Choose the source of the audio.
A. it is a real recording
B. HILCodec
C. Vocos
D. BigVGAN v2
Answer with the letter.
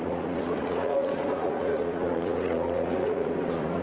C